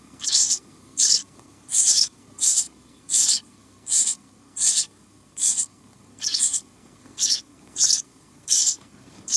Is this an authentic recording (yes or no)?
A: no